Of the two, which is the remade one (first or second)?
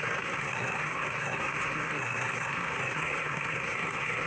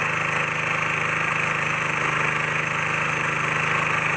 first